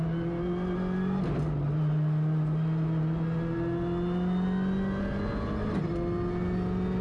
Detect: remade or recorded recorded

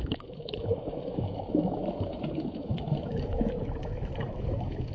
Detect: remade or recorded remade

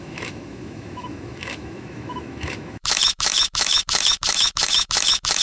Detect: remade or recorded remade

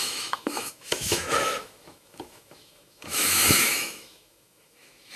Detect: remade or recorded remade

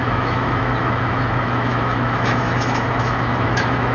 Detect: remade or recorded remade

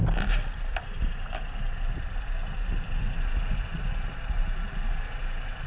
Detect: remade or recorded recorded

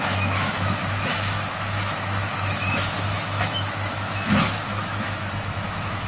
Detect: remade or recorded remade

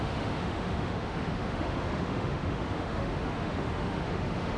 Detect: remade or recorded remade